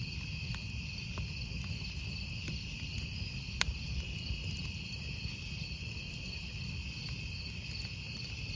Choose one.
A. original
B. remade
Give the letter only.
A